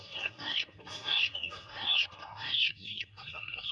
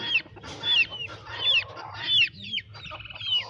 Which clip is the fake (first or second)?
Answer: first